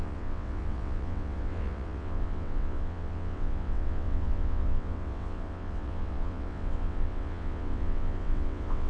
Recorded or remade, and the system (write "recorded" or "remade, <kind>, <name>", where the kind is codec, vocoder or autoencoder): remade, vocoder, WaveNeXt